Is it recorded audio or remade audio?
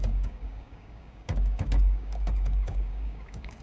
remade